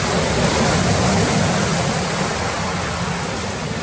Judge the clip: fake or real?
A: real